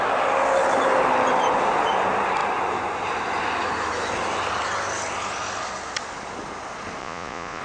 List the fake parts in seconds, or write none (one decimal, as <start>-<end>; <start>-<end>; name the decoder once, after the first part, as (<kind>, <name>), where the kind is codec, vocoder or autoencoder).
7.0-7.6 (vocoder, Vocos)